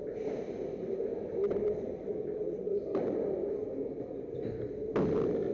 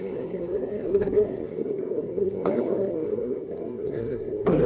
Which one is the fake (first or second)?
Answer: second